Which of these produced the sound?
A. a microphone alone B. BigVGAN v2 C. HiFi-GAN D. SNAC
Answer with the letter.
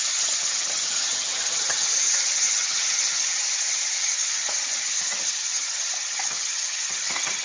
C